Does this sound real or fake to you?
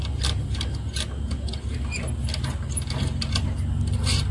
real